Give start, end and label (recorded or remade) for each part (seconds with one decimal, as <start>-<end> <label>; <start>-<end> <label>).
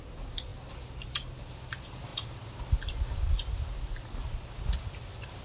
0.0-5.4 recorded